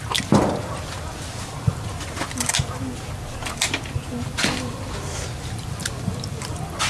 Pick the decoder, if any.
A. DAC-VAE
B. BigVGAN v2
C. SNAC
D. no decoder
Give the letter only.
D